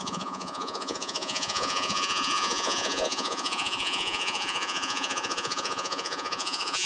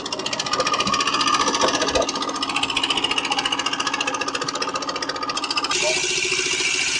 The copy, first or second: first